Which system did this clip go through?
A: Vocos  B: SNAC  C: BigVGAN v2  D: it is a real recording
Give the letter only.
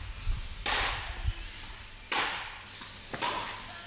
D